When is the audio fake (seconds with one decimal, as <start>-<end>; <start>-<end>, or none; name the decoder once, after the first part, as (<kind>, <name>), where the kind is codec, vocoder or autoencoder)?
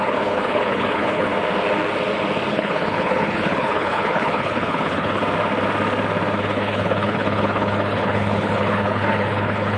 0.0-1.3 (codec, HILCodec); 2.5-5.2; 6.4-9.8